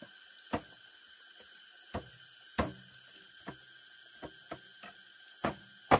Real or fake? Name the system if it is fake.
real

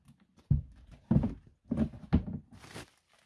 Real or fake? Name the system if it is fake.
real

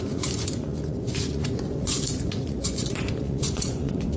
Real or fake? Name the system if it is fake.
fake, vocoder, Vocos